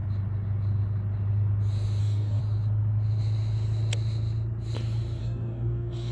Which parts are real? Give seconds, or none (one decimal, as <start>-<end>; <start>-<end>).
0.0-2.0; 2.4-5.2